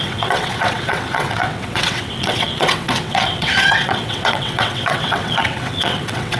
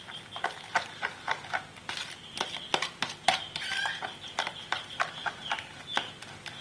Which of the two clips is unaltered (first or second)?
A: second